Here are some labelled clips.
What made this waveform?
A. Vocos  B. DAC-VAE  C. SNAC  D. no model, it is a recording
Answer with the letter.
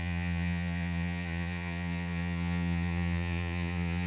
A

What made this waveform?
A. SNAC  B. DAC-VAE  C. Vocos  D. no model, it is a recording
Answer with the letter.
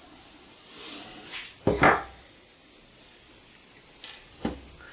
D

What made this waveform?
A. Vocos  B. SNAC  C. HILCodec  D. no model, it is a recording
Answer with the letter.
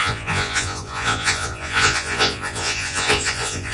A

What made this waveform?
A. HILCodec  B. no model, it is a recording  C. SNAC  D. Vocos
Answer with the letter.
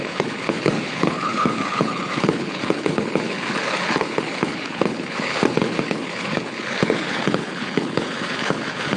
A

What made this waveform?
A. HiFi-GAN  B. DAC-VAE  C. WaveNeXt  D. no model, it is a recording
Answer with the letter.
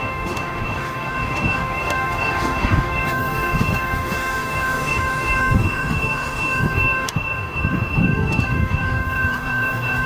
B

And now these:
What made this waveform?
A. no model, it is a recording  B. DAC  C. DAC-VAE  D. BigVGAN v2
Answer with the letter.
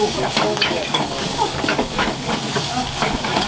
B